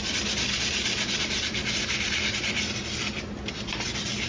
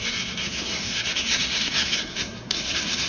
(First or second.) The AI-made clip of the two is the second